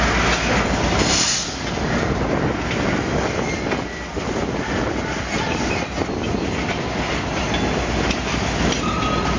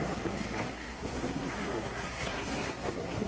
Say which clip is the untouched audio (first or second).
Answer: first